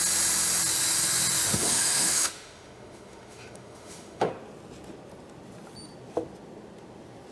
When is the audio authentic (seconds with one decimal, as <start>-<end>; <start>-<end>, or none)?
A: 0.0-1.5; 4.3-7.3